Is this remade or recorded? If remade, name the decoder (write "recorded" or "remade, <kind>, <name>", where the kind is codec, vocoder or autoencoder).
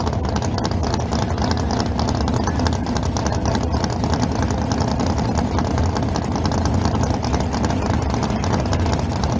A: recorded